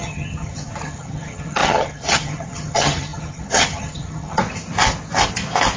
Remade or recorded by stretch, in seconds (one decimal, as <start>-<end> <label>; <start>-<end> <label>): 0.0-4.4 remade; 4.4-5.8 recorded

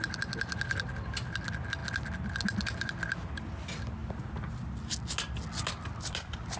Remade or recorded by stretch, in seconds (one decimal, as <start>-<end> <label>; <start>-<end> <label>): 0.0-6.6 recorded